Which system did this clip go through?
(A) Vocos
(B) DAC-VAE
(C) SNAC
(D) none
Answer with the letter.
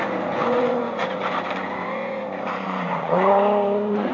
A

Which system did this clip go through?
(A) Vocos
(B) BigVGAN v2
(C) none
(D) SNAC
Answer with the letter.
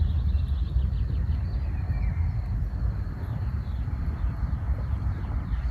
C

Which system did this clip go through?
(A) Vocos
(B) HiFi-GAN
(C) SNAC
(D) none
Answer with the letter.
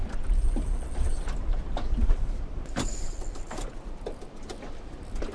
D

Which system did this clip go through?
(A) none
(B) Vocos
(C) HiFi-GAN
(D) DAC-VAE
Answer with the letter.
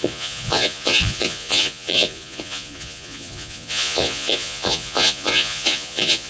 B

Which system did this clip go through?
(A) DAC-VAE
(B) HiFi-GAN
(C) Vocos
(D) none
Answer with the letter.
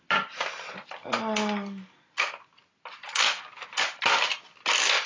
D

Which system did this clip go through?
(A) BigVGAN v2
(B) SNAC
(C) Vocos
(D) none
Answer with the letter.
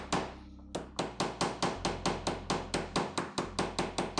D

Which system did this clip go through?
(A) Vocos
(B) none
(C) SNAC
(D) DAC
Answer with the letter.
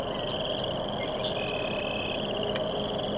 B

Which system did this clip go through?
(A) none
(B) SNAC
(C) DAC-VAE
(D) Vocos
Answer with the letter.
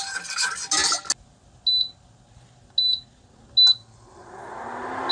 A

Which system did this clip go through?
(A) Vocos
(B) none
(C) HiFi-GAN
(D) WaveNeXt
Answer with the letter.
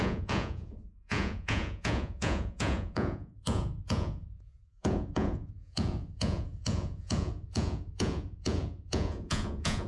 A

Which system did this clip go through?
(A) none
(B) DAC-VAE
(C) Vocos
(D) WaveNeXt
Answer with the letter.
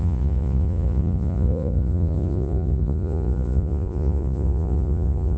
C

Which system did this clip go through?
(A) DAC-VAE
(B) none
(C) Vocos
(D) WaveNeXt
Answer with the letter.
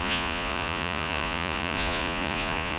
C